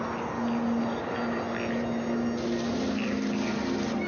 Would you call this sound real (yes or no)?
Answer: yes